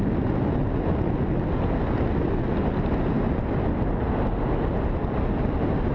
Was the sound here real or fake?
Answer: real